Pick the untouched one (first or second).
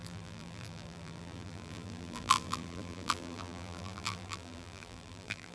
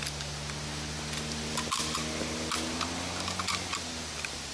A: second